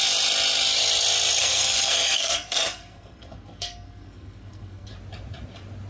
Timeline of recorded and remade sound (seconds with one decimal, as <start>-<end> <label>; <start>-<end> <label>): 0.0-1.4 recorded; 1.4-4.9 remade; 4.9-5.9 recorded